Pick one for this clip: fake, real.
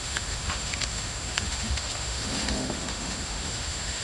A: fake